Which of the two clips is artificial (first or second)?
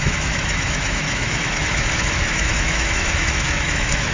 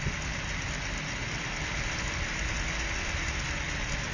first